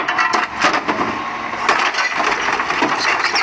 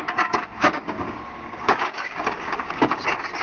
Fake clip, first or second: second